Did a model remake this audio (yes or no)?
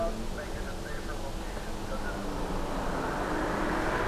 no